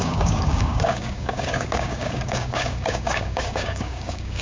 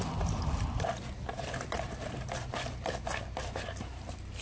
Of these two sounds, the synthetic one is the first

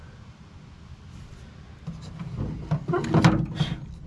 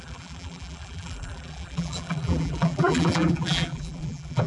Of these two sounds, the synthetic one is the second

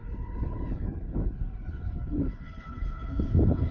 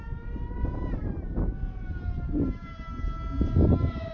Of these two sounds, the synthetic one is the first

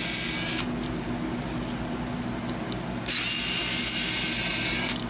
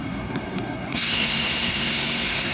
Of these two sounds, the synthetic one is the second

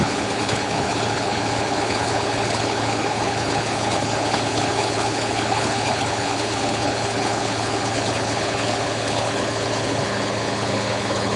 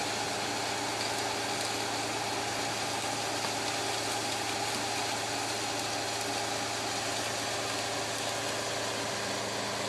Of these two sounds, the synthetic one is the first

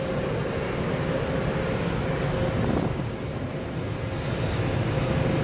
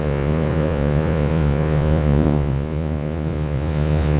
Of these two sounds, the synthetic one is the second